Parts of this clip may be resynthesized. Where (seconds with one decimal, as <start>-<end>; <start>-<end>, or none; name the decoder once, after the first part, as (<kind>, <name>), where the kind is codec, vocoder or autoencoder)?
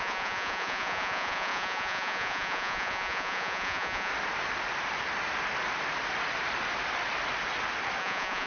0.0-4.1 (vocoder, Vocos); 8.0-8.5